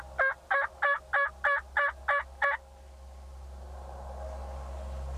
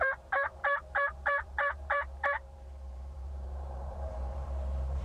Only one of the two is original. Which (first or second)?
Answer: first